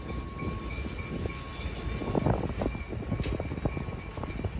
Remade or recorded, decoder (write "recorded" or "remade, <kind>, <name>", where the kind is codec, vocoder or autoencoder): recorded